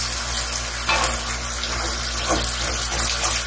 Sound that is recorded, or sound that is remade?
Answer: recorded